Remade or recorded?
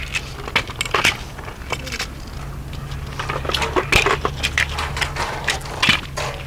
recorded